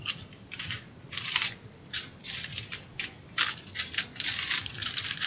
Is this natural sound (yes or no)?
no